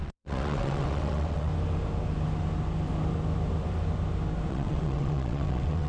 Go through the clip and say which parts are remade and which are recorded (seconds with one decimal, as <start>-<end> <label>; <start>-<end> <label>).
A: 0.0-1.5 remade; 1.5-4.5 recorded; 4.5-5.9 remade